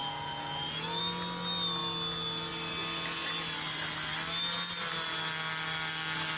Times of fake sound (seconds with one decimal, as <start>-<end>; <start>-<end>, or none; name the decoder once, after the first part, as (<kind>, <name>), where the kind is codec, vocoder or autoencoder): 0.0-1.0 (vocoder, Vocos)